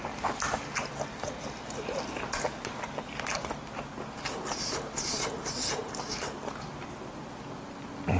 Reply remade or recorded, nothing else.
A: recorded